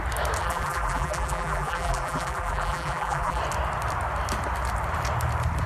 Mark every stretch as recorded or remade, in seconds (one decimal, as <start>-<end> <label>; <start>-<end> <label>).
0.0-0.4 recorded; 0.4-3.4 remade; 3.4-5.7 recorded